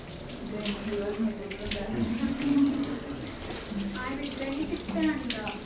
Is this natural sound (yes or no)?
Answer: yes